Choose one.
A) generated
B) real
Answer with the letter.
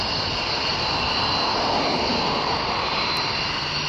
B